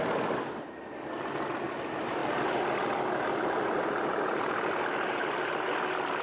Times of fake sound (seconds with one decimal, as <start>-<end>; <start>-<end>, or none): none